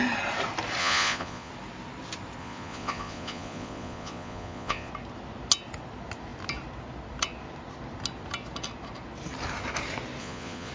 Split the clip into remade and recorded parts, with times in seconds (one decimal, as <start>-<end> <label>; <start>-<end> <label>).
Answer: 0.0-0.8 recorded; 0.8-1.5 remade; 1.5-2.4 recorded; 2.4-4.9 remade; 4.9-10.2 recorded; 10.2-10.7 remade